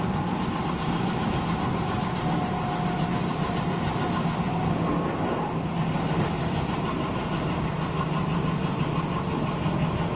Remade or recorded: recorded